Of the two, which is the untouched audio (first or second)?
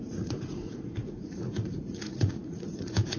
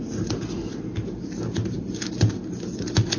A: second